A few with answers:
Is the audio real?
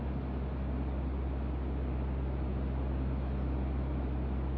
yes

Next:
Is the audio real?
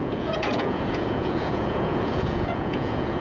no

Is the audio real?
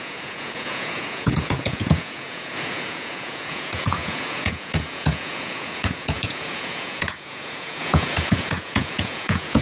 no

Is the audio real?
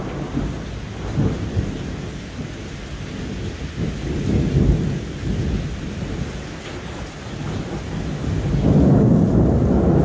yes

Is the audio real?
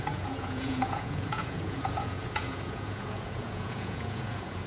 no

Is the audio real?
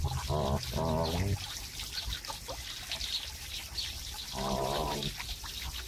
yes